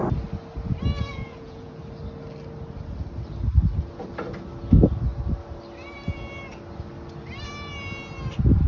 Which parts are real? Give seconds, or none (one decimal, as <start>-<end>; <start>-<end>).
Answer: 0.0-1.0; 1.8-8.7